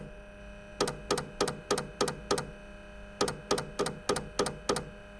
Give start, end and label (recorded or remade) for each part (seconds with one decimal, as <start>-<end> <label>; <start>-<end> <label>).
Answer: 0.0-5.2 recorded